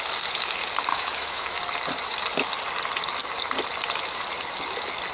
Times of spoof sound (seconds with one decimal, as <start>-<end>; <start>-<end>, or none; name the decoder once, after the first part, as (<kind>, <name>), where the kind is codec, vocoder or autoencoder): 0.9-1.6 (autoencoder, DAC-VAE)